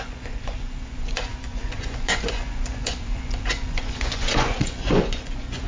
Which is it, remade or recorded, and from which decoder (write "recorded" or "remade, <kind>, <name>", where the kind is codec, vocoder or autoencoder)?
remade, vocoder, Vocos